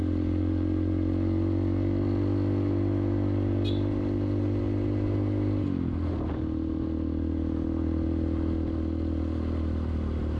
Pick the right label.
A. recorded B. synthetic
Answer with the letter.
A